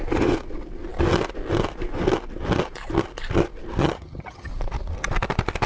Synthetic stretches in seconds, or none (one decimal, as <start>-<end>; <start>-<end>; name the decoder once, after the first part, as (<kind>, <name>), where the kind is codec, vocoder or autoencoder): 3.8-4.5 (vocoder, HiFi-GAN)